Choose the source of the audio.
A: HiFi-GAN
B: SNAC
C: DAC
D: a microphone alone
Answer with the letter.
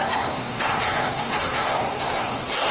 B